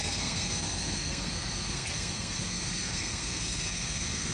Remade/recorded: remade